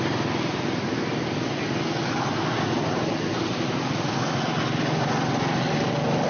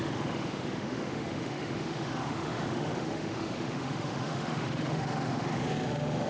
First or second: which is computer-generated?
second